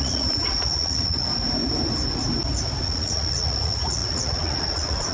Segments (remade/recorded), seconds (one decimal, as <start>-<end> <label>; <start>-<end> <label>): 0.0-1.3 remade; 1.3-2.8 recorded; 2.8-5.1 remade